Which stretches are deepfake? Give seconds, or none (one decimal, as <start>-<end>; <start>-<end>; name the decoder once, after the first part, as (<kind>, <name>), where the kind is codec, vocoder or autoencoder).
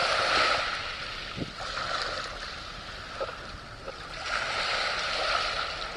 none